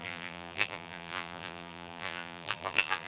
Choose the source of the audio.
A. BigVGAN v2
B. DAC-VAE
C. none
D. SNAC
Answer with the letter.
A